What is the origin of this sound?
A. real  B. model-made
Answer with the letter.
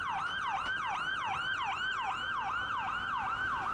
A